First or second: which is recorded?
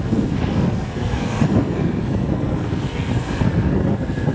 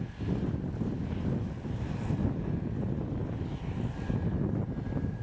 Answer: second